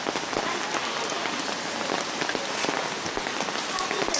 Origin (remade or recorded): recorded